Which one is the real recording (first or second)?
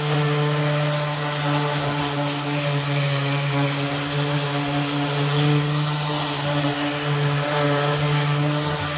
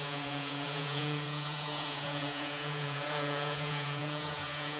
first